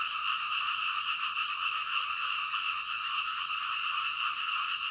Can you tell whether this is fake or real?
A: fake